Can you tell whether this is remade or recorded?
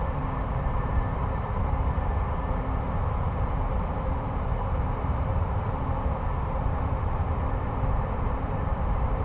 remade